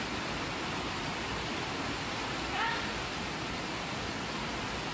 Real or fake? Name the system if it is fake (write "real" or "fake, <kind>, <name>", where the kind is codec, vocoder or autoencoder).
real